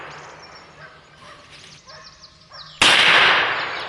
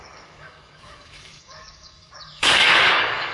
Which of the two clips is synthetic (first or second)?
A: second